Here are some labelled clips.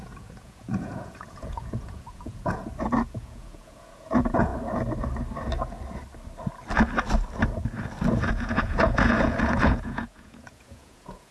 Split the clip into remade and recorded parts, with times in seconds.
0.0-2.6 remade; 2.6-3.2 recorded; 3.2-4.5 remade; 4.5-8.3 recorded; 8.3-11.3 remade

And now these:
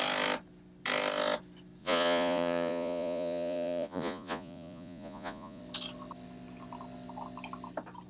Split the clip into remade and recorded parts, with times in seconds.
0.0-1.8 recorded; 1.8-5.6 remade; 5.6-8.1 recorded

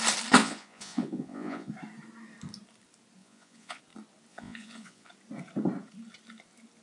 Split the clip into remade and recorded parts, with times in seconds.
0.0-0.4 recorded; 0.4-1.7 remade; 1.7-3.2 recorded; 3.2-3.8 remade; 3.8-4.3 recorded; 4.3-5.1 remade; 5.1-6.8 recorded

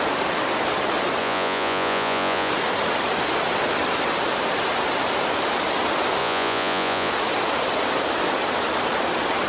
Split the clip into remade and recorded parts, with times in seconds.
0.0-1.2 recorded; 1.2-2.5 remade; 2.5-6.2 recorded; 6.2-7.1 remade; 7.1-9.5 recorded

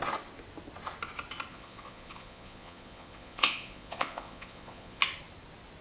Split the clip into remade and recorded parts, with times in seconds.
0.0-1.5 recorded; 1.5-5.0 remade; 5.0-5.8 recorded

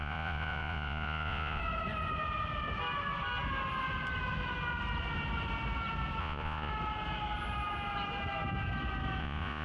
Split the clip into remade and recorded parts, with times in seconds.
0.0-1.6 remade; 1.6-6.2 recorded; 6.2-6.7 remade; 6.7-9.2 recorded; 9.2-9.6 remade